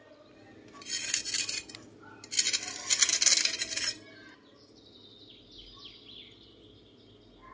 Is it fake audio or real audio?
real